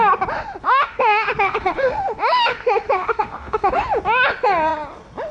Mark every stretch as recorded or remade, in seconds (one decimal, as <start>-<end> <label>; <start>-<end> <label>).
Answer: 0.0-0.6 recorded; 0.6-3.8 remade; 3.8-5.3 recorded